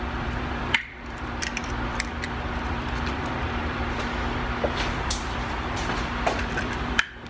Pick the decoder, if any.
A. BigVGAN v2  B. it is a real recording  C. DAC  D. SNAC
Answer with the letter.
A